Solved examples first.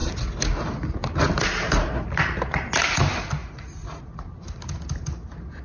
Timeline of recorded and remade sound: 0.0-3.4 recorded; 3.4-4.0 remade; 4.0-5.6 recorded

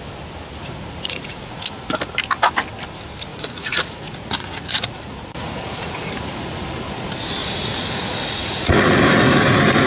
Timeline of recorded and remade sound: 0.0-0.6 recorded; 0.6-1.8 remade; 1.8-3.3 recorded; 3.3-6.1 remade; 6.1-7.4 recorded; 7.4-9.0 remade; 9.0-9.9 recorded

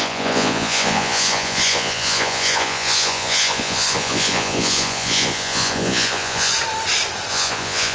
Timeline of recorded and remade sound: 0.0-6.5 remade; 6.5-7.3 recorded; 7.3-7.9 remade

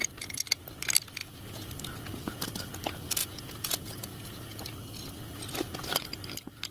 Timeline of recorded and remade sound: 0.0-1.2 recorded; 1.2-1.7 remade; 1.7-3.2 recorded; 3.2-4.6 remade; 4.6-6.7 recorded